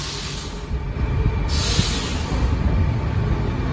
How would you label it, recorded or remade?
recorded